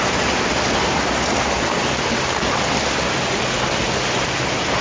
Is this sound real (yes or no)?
yes